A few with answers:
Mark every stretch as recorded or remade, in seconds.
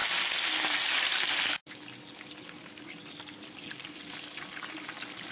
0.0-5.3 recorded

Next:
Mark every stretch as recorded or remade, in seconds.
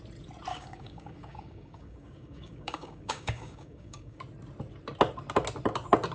0.0-0.5 recorded; 0.5-4.2 remade; 4.2-6.1 recorded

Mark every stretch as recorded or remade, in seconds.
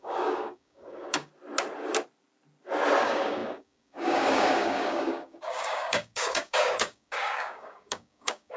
0.0-1.3 remade; 1.3-3.0 recorded; 3.0-8.6 remade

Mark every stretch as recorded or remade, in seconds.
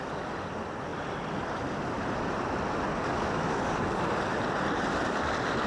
0.0-2.9 recorded; 2.9-4.0 remade; 4.0-5.7 recorded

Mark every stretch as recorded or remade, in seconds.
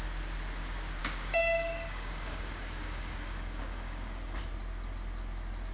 0.0-1.0 recorded; 1.0-4.4 remade; 4.4-5.7 recorded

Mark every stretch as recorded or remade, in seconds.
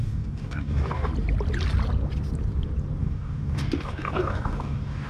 0.0-1.1 remade; 1.1-3.0 recorded; 3.0-5.1 remade